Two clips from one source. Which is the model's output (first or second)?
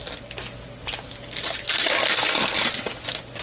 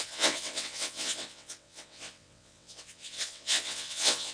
second